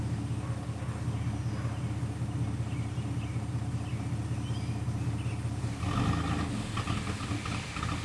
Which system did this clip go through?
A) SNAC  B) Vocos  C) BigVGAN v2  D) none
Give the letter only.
D